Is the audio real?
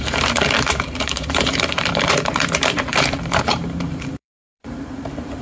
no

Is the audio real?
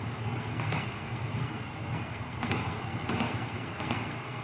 no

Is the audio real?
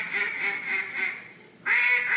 yes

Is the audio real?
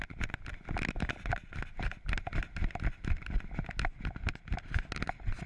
yes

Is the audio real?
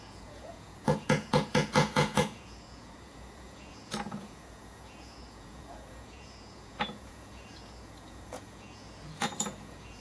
no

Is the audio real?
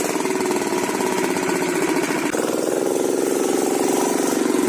yes